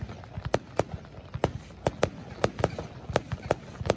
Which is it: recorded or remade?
recorded